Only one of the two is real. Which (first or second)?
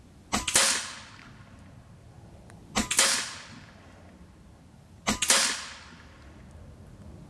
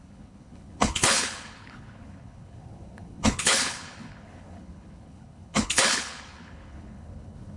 first